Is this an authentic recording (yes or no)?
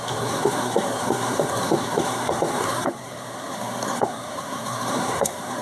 no